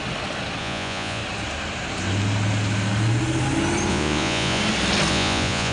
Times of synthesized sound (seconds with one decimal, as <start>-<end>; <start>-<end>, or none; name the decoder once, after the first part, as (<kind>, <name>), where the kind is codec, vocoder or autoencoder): 0.6-1.2 (vocoder, Vocos); 3.9-4.6; 5.1-5.7